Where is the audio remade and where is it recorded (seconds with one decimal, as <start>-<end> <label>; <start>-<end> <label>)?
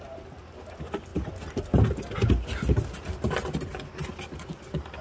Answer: 0.0-5.0 recorded